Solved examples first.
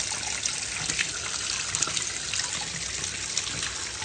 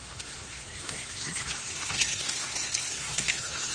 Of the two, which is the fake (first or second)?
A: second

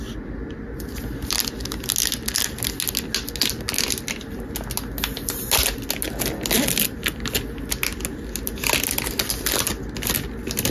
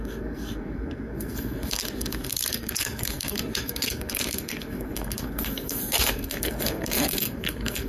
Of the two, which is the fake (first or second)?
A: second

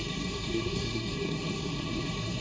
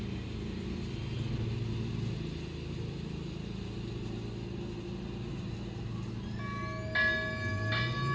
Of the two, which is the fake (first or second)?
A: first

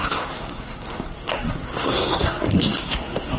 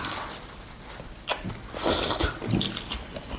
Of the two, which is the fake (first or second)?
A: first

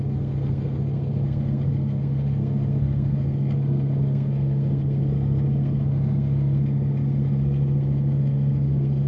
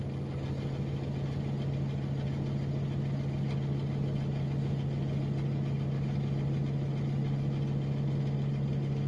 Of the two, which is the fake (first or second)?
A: first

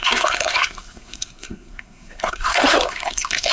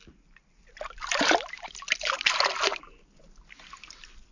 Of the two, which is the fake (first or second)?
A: first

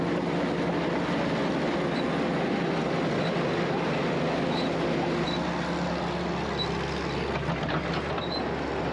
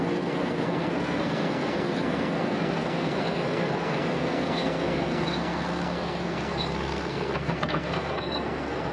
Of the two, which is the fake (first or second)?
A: second